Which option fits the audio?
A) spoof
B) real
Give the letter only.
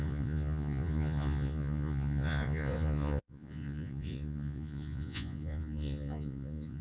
A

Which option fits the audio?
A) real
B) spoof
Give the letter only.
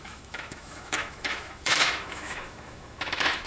B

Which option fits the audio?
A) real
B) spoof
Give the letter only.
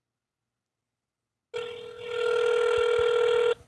A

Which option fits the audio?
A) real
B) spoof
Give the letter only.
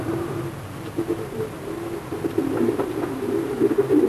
A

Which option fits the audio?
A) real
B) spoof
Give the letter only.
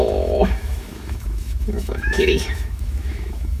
B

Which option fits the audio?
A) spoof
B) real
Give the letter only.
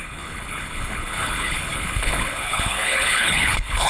A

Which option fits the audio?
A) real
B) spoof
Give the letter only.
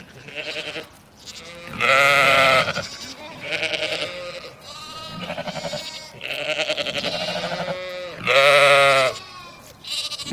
A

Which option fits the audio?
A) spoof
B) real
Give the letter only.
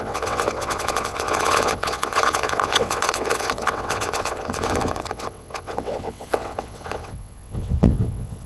A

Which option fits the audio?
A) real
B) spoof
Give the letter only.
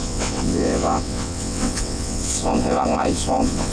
B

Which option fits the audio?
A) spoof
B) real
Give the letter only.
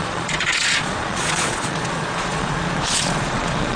A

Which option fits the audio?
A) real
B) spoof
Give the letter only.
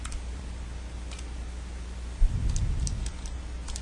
A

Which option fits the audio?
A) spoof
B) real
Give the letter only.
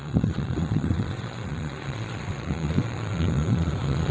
A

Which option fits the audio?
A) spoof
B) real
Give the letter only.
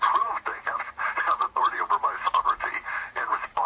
A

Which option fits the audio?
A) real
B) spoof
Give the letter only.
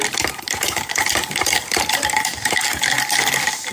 B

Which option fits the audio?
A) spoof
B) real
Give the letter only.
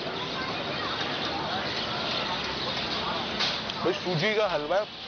B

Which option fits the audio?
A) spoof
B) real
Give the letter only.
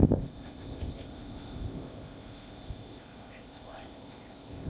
A